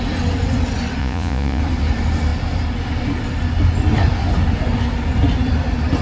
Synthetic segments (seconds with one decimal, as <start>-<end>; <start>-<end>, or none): 1.0-1.6